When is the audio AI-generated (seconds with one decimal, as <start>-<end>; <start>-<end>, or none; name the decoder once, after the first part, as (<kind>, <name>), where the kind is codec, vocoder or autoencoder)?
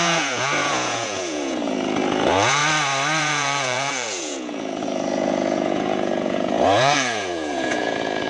0.0-2.6 (vocoder, Vocos); 3.2-8.3